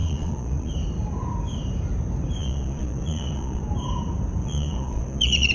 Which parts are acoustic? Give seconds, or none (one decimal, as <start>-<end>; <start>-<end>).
0.7-2.4; 3.6-4.4